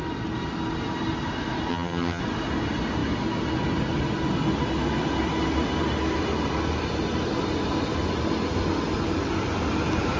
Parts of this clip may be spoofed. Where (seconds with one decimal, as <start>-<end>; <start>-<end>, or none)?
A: 1.7-2.2

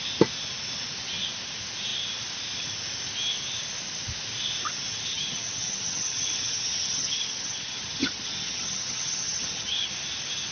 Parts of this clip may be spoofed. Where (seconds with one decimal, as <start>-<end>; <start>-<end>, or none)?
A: 5.1-9.9

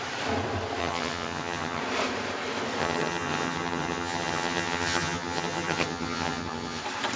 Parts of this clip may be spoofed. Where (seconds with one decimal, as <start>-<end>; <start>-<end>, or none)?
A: 0.8-1.8; 2.8-6.8

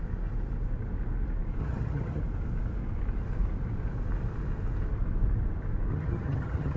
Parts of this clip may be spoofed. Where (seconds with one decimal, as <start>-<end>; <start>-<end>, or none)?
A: 1.6-2.2; 5.9-6.8

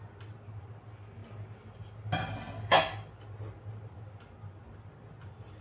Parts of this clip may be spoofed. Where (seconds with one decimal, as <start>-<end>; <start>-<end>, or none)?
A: none

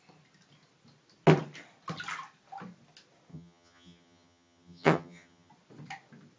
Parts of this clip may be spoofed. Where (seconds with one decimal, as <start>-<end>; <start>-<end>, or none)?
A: 3.3-5.5

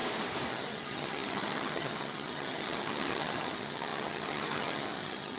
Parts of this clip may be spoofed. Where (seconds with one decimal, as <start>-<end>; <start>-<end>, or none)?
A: 0.5-5.4